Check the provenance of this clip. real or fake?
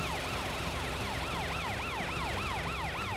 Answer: real